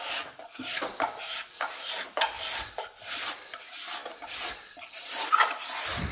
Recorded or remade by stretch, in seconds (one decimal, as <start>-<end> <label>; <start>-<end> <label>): 0.0-6.1 recorded